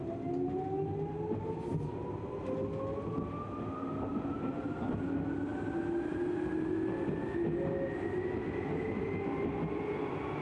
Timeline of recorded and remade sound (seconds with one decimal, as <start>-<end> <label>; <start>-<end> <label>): 0.0-4.1 recorded; 4.1-4.8 remade; 4.8-10.4 recorded